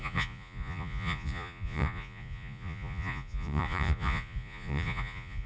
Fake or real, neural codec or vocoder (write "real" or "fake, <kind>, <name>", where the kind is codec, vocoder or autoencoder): fake, vocoder, Vocos